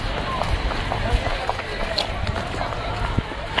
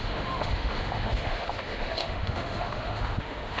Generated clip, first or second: second